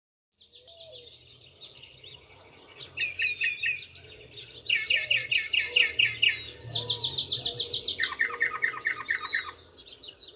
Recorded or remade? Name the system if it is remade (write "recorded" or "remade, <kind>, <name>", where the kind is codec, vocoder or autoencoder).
recorded